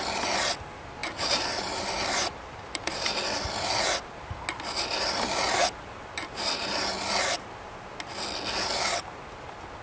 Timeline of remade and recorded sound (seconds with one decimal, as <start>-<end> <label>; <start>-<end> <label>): 0.0-1.0 recorded; 1.0-3.8 remade; 3.8-9.8 recorded